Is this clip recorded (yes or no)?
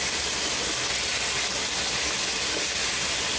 yes